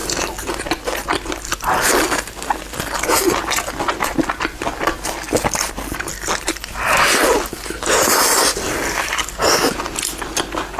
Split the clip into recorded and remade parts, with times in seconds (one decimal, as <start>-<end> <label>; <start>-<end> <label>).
0.0-10.8 recorded